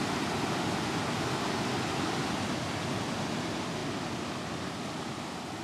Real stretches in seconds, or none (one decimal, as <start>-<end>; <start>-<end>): 0.0-5.6